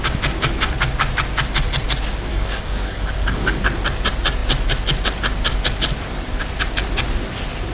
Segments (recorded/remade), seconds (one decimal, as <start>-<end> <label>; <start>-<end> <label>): 0.0-2.3 recorded; 2.3-3.6 remade; 3.6-7.7 recorded